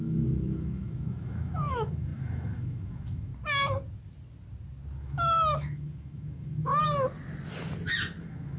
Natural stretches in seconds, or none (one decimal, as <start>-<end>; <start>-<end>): 3.3-5.0; 6.8-8.2